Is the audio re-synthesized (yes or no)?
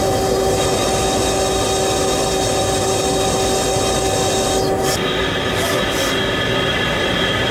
no